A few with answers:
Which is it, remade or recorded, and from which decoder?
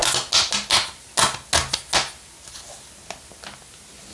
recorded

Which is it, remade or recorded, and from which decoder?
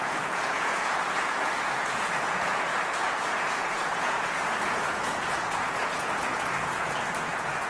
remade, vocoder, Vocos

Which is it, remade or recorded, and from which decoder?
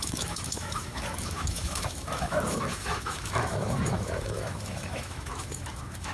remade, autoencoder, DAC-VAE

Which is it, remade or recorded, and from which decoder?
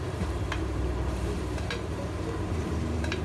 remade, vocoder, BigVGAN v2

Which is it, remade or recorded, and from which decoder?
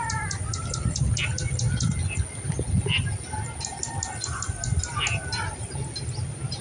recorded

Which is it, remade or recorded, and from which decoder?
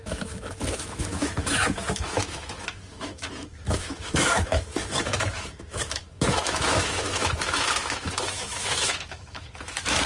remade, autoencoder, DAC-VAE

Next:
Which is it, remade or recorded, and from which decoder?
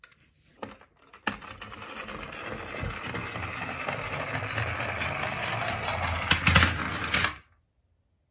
recorded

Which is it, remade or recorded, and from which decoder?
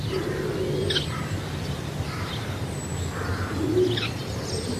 recorded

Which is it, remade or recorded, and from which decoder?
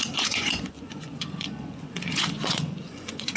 remade, vocoder, Vocos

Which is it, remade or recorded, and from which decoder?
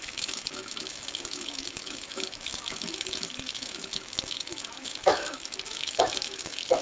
remade, autoencoder, DAC-VAE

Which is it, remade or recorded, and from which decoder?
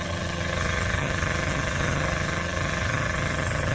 remade, vocoder, HiFi-GAN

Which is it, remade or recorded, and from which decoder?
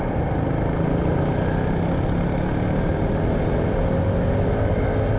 recorded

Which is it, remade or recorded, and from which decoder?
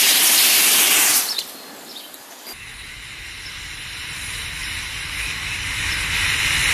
recorded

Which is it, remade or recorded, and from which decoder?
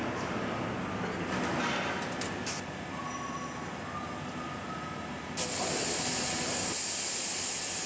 recorded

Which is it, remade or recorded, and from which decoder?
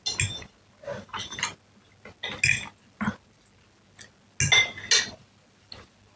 recorded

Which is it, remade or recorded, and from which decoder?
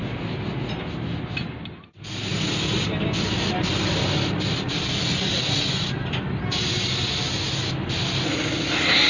recorded